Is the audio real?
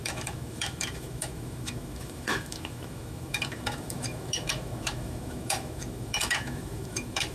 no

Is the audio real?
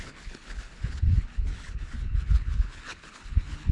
no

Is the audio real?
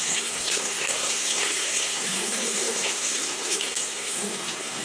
no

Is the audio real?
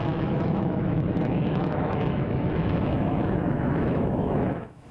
no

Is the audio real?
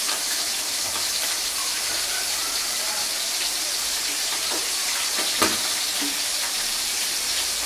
no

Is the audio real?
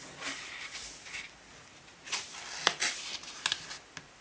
yes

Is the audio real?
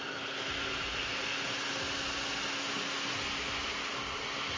yes